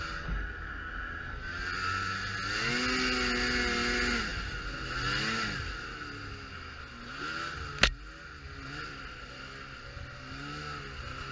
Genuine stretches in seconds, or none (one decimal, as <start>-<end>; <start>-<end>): 0.0-11.3